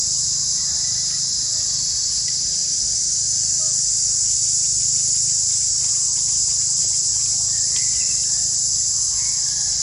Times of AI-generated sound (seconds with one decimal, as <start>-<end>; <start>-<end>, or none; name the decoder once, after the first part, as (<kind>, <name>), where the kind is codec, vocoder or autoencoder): 0.0-2.6 (vocoder, BigVGAN v2); 4.8-7.1; 8.1-9.8